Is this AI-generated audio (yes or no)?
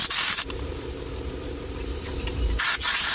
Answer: yes